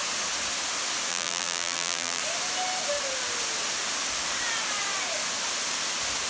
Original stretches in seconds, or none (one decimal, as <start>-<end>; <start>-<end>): 0.0-1.1; 2.2-6.3